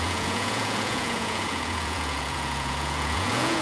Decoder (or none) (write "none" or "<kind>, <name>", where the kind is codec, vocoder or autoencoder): vocoder, Vocos